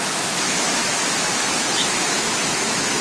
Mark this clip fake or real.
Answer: fake